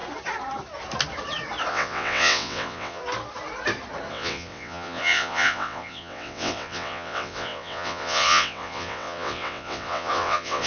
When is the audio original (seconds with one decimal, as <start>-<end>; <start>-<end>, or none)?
0.0-1.7; 3.0-4.1

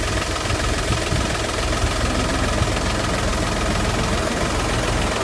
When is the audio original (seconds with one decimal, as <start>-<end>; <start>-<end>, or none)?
0.0-5.2

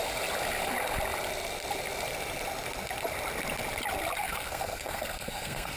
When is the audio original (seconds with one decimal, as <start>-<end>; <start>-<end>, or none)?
0.0-4.2

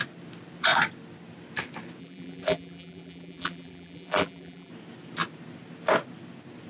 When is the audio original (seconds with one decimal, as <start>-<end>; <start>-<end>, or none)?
0.0-2.0; 4.7-6.7

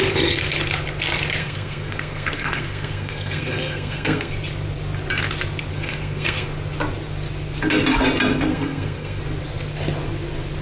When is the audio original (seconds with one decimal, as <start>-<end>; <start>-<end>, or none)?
0.0-1.4; 4.3-5.7; 6.5-8.5; 9.2-10.6

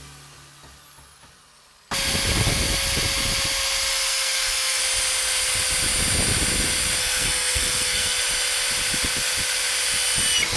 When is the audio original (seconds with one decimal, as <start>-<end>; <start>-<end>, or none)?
0.0-3.9; 4.8-7.0; 8.2-10.6

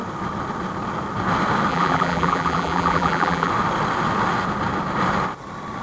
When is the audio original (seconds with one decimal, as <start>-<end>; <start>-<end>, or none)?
0.0-1.7; 3.5-5.8

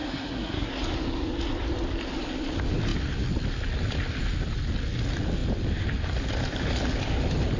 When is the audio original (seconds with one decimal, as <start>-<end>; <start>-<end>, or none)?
0.7-7.6